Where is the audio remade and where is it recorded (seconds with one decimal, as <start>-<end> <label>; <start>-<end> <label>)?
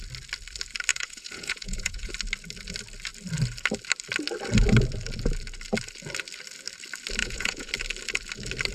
0.0-0.9 recorded; 0.9-2.1 remade; 2.1-7.2 recorded; 7.2-7.7 remade; 7.7-8.7 recorded